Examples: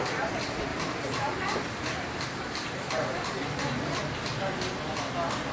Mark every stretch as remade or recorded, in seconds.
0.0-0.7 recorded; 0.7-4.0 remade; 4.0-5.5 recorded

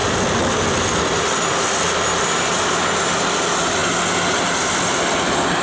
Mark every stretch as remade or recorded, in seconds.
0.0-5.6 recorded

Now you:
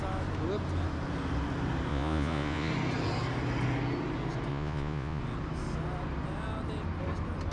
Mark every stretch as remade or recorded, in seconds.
0.0-1.9 recorded; 1.9-2.7 remade; 2.7-4.5 recorded; 4.5-5.2 remade; 5.2-7.5 recorded

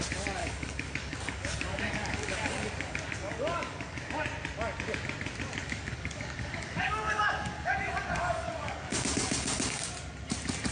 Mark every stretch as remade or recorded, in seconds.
0.0-0.4 recorded; 0.4-4.1 remade; 4.1-5.6 recorded; 5.6-9.9 remade; 9.9-10.7 recorded

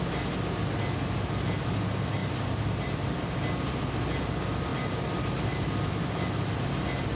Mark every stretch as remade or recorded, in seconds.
0.0-2.2 recorded; 2.2-3.1 remade; 3.1-7.2 recorded